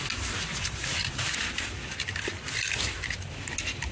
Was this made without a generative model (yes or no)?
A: yes